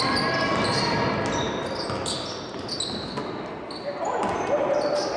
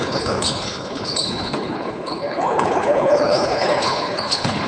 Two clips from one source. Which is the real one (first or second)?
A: first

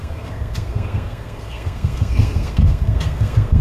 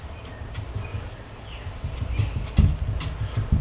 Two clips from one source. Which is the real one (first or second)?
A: second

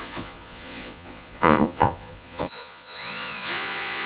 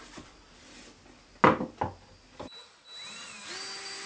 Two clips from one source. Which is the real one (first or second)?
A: second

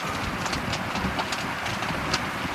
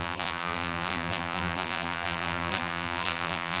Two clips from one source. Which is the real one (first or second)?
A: first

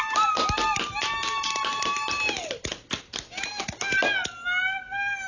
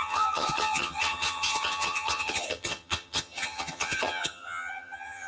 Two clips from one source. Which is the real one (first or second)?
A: first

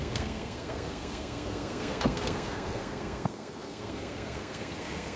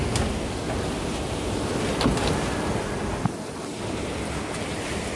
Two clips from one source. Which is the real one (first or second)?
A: second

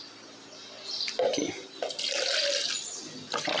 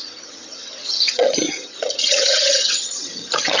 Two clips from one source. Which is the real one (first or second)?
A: first